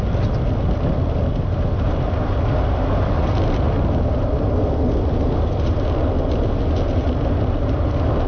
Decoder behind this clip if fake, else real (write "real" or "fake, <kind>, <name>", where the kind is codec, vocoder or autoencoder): real